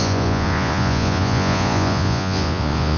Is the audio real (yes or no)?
no